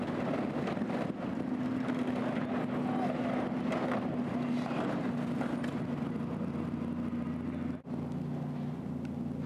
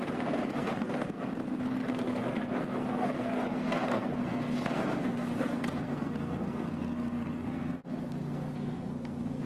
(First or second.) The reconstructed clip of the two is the second